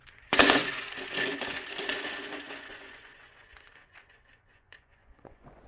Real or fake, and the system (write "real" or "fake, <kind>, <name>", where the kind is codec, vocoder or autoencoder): fake, vocoder, Vocos